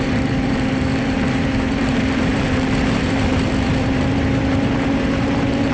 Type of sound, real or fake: fake